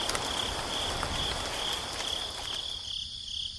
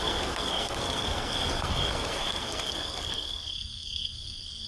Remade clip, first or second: second